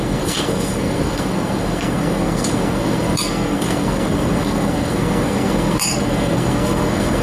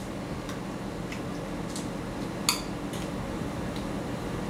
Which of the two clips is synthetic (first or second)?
first